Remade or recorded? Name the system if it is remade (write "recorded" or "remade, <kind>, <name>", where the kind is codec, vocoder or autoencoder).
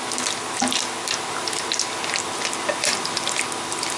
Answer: recorded